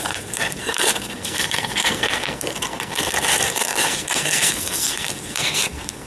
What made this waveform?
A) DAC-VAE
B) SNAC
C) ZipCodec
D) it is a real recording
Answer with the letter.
B